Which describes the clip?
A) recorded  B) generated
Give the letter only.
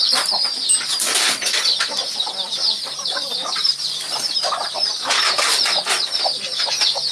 A